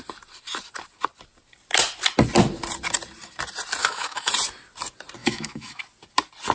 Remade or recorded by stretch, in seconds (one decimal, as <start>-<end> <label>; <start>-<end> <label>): 0.0-3.8 recorded; 3.8-4.3 remade; 4.3-5.2 recorded; 5.2-5.8 remade; 5.8-6.5 recorded